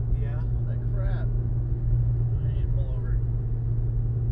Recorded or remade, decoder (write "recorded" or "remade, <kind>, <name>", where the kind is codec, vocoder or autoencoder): recorded